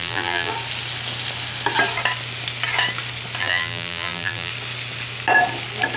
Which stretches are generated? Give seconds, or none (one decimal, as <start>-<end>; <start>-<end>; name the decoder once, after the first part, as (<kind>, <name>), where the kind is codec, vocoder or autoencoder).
0.0-0.5 (vocoder, BigVGAN v2); 3.4-4.5